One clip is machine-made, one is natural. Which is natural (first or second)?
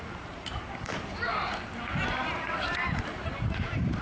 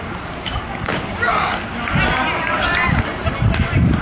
second